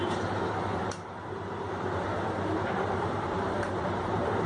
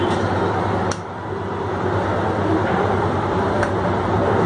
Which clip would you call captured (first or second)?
second